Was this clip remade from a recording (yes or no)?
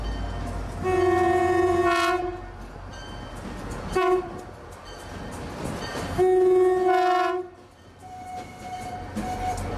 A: no